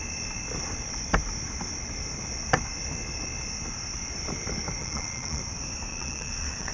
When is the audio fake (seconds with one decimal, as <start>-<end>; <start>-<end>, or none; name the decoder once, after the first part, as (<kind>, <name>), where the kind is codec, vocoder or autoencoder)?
4.8-5.4 (vocoder, Vocos); 5.9-6.7